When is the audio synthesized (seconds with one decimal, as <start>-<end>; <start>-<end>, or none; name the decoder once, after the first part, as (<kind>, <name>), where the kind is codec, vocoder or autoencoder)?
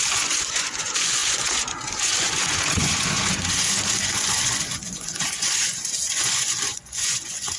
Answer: 0.0-7.6 (vocoder, Vocos)